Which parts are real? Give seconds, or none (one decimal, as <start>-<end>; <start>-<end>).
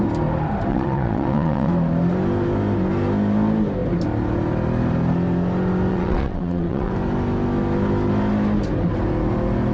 0.0-0.7; 1.7-5.9; 6.9-9.7